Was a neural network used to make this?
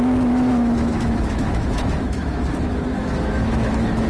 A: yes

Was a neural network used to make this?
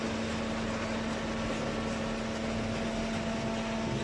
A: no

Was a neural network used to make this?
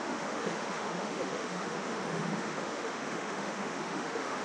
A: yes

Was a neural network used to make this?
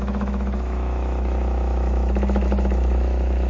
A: yes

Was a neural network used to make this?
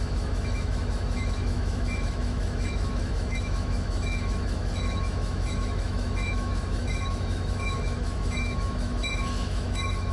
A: yes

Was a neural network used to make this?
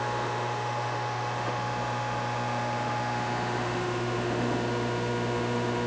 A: yes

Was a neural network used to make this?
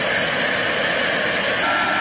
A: no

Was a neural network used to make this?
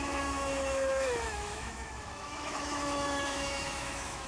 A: yes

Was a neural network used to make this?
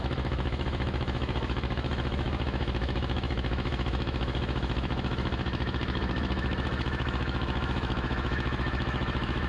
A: yes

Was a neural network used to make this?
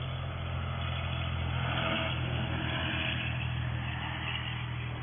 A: no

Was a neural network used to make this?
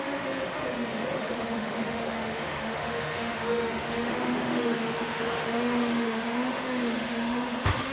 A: yes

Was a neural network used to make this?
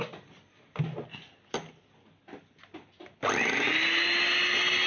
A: no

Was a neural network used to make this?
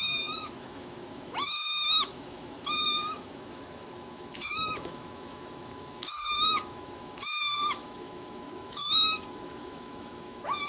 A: yes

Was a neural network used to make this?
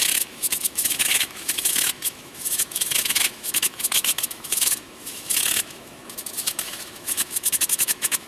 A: yes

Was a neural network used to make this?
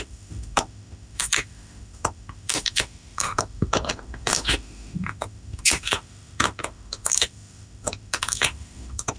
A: yes